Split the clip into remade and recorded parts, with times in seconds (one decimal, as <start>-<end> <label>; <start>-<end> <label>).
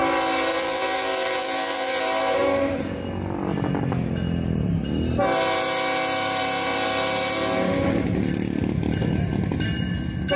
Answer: 0.0-0.5 recorded; 0.5-2.0 remade; 2.0-10.4 recorded